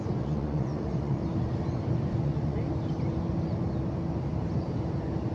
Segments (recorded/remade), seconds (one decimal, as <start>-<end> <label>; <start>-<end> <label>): 0.0-1.2 remade; 1.2-2.2 recorded; 2.2-2.6 remade; 2.6-5.3 recorded